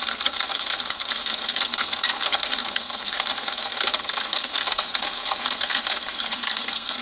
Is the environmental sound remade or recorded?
remade